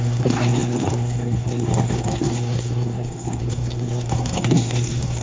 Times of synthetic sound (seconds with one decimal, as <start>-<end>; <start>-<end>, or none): 0.0-5.2